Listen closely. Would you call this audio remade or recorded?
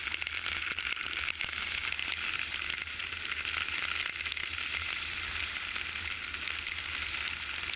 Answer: recorded